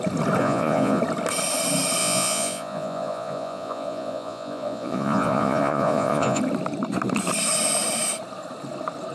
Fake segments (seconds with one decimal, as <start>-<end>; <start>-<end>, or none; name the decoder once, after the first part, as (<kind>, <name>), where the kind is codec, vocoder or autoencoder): 0.4-1.0 (vocoder, Vocos); 2.0-6.4